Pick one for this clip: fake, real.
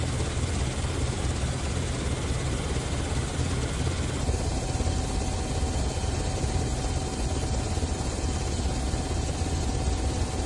real